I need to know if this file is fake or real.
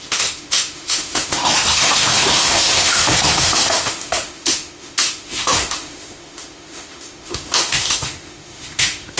fake